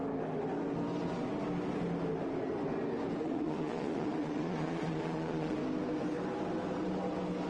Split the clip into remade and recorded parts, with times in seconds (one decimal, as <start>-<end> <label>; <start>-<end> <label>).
0.0-3.2 recorded; 3.2-5.6 remade; 5.6-7.5 recorded